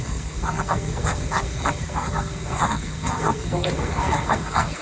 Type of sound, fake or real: fake